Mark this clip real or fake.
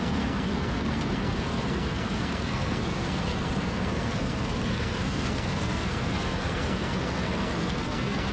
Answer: fake